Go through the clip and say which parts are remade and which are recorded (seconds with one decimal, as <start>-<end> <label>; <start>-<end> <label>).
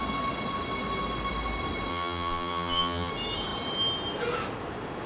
0.0-1.9 recorded; 1.9-3.1 remade; 3.1-5.1 recorded